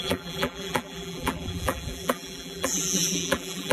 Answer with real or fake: fake